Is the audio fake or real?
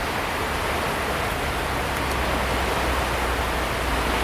real